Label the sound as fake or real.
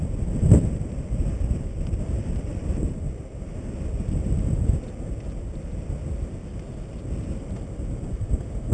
real